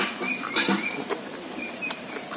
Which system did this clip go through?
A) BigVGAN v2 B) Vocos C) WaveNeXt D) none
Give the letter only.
A